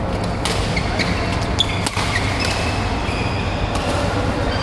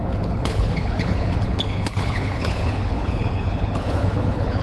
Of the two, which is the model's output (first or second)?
second